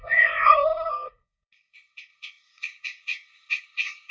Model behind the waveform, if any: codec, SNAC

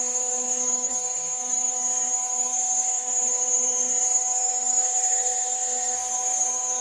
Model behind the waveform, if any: codec, SNAC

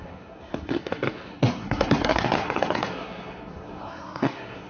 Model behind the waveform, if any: codec, SNAC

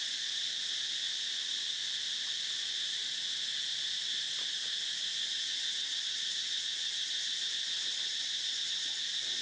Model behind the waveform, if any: none